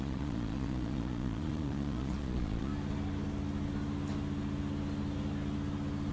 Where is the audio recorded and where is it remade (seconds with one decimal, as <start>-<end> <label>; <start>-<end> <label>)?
0.0-2.7 remade; 2.7-6.1 recorded

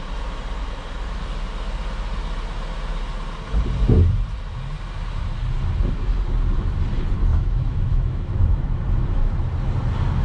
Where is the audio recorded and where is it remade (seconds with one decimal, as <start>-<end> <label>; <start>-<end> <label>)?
0.0-7.3 recorded; 7.3-8.6 remade; 8.6-10.2 recorded